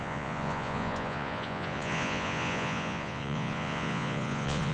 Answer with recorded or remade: remade